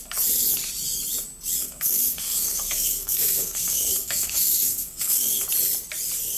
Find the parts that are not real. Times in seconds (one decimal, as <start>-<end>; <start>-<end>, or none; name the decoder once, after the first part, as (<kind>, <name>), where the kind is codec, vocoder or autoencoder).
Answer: 1.6-5.4 (codec, SNAC)